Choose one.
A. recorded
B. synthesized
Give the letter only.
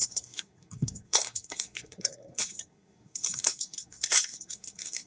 B